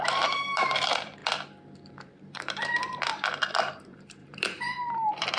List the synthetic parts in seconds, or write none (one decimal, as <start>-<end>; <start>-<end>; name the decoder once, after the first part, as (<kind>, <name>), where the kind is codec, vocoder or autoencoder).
0.0-1.2 (vocoder, BigVGAN v2); 1.9-3.1; 3.7-5.4